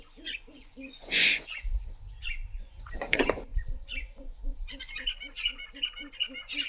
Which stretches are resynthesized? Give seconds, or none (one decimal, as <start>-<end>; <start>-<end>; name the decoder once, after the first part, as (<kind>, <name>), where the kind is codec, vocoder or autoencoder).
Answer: 0.0-6.7 (vocoder, Vocos)